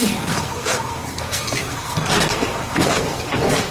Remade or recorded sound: remade